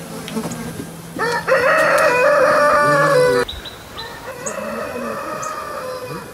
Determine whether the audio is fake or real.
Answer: real